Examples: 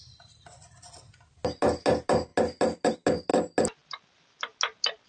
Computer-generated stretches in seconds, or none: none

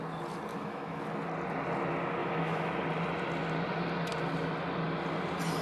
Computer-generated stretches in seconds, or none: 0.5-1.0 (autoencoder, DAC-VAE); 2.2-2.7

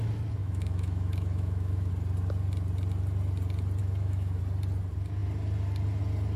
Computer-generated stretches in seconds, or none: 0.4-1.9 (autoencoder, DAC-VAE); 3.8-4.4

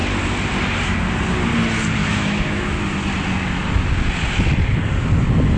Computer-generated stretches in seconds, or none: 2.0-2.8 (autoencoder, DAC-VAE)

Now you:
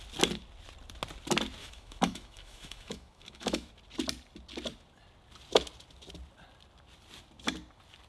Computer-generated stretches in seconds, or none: 1.6-3.7 (autoencoder, DAC-VAE)

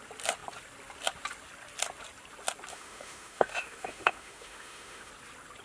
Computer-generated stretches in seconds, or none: 2.7-5.1 (autoencoder, DAC-VAE)